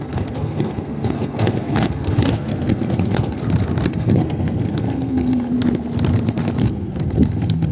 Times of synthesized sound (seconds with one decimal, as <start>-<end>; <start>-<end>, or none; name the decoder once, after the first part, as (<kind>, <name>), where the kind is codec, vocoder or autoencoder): 0.0-3.4 (codec, SNAC); 3.9-5.5; 6.6-7.7